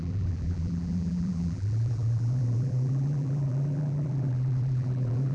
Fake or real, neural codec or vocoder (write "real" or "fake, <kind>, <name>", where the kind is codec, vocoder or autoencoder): fake, vocoder, BigVGAN v2